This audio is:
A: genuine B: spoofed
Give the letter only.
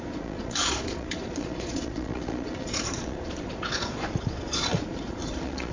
B